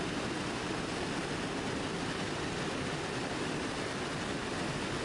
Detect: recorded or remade recorded